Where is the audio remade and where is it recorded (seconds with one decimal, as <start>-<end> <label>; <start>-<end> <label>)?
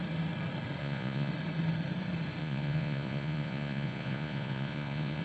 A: 0.0-0.8 recorded; 0.8-1.3 remade; 1.3-2.4 recorded; 2.4-5.2 remade